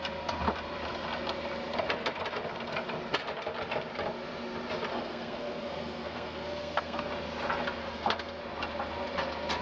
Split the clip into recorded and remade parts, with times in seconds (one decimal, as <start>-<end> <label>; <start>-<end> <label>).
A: 0.0-4.9 recorded; 4.9-7.1 remade; 7.1-7.8 recorded; 7.8-8.4 remade; 8.4-9.6 recorded